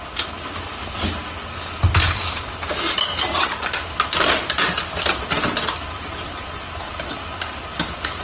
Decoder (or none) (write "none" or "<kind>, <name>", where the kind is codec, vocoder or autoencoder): none